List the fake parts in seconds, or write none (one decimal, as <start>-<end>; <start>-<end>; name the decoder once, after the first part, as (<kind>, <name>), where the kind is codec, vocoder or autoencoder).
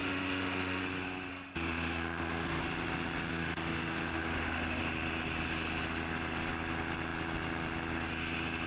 0.0-0.8 (autoencoder, DAC-VAE); 1.3-2.6; 3.3-4.8